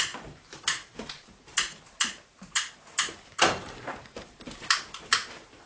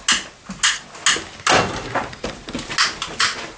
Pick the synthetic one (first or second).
first